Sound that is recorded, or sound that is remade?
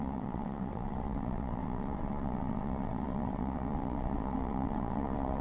remade